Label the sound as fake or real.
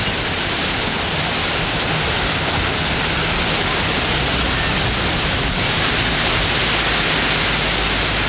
real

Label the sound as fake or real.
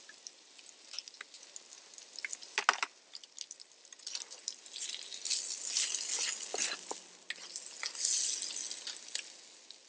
real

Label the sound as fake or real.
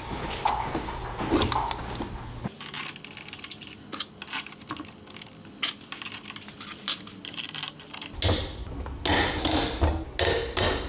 real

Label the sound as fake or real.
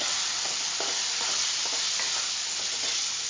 real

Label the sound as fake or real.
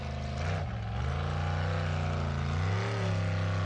real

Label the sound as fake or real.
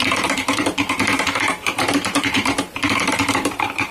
fake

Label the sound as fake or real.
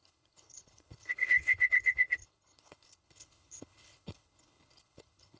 fake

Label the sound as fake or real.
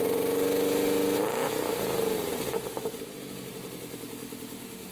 real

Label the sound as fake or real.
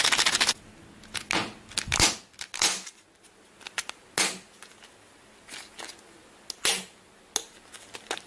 real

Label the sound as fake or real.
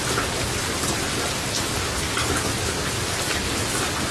real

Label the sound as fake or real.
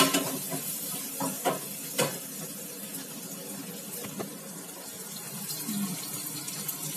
real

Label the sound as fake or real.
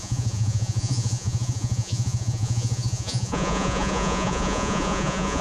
fake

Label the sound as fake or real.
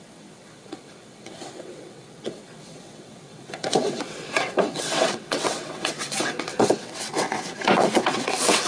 fake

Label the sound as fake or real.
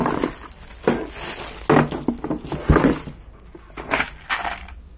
real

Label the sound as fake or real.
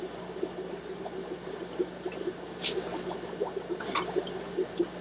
real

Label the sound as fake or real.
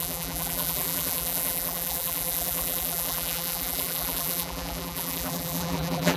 fake